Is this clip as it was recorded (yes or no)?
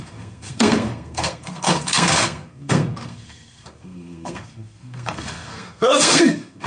no